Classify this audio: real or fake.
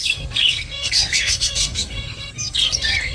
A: fake